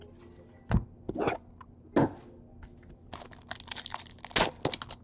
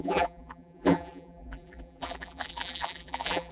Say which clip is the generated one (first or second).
second